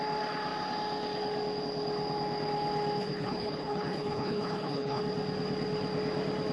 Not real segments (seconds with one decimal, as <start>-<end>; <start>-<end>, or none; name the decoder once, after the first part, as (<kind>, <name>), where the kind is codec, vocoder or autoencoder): 3.0-5.0 (codec, HILCodec)